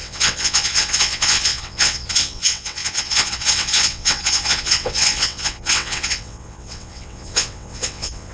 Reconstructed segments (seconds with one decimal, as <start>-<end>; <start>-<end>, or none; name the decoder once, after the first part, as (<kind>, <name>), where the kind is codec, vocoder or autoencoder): 0.0-8.3 (vocoder, WaveNeXt)